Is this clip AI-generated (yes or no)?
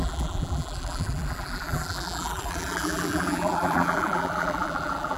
yes